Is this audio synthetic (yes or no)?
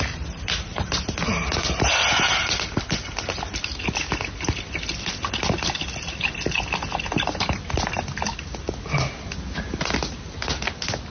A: no